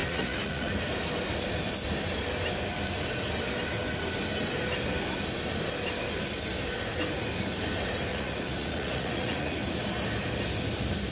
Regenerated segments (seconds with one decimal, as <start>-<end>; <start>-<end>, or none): 0.0-0.7; 8.1-9.6